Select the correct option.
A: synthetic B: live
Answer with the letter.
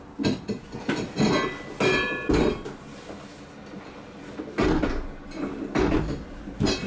B